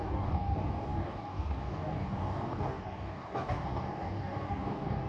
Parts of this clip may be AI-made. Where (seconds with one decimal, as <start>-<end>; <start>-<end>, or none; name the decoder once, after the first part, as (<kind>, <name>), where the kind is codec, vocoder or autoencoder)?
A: 0.0-5.1 (codec, DAC)